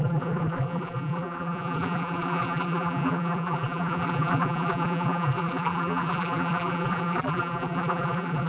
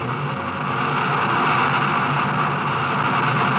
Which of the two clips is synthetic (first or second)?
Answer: first